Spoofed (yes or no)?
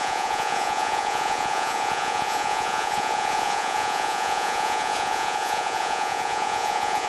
yes